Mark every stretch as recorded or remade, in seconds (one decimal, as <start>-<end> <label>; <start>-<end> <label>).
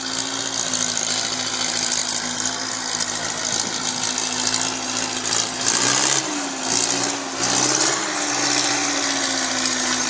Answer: 0.0-10.1 recorded